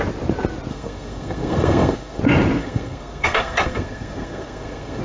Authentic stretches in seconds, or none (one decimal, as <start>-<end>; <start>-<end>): 0.0-0.7; 2.2-2.6